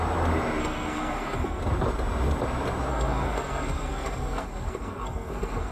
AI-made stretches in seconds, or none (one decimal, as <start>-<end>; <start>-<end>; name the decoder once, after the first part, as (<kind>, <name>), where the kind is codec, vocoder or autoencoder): 0.6-1.6 (codec, SNAC); 2.9-5.7